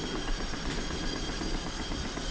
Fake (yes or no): no